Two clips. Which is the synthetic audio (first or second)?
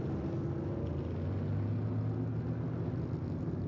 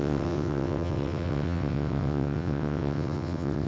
second